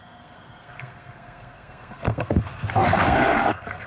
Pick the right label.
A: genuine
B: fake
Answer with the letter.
B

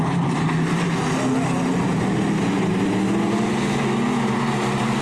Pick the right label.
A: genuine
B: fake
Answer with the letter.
A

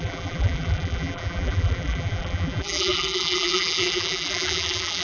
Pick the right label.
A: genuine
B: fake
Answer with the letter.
B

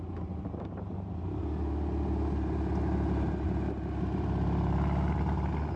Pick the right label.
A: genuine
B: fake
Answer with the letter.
A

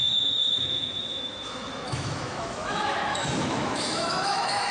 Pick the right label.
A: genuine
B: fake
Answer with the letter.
B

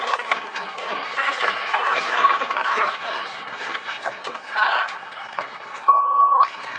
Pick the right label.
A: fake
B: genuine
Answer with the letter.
A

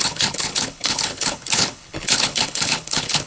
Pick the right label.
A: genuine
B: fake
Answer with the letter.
B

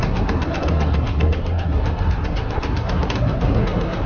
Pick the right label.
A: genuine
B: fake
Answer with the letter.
B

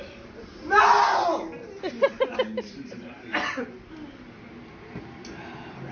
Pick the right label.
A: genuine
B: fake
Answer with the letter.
A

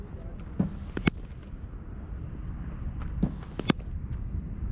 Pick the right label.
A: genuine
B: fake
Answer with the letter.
A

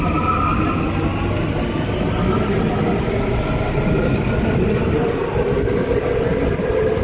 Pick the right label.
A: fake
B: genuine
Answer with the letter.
B